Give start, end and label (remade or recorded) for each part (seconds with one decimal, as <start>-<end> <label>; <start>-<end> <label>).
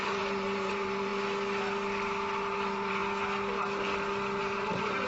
0.0-1.1 remade; 1.1-2.4 recorded; 2.4-3.0 remade; 3.0-4.4 recorded; 4.4-5.1 remade